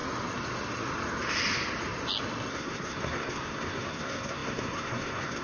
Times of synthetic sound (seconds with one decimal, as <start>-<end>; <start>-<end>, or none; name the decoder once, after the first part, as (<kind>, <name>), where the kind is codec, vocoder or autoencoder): 2.5-5.4 (codec, SNAC)